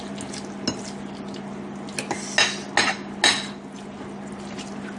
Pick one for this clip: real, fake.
real